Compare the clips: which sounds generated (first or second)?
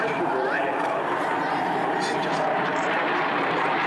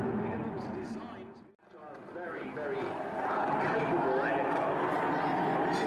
first